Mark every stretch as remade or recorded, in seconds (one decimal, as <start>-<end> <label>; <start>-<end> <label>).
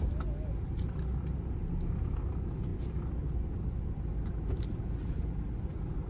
0.0-6.1 recorded